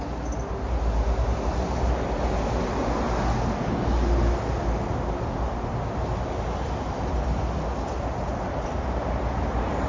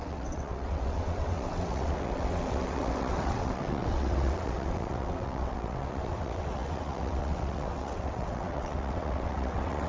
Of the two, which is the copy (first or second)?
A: second